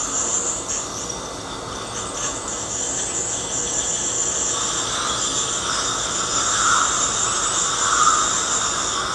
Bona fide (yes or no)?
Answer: yes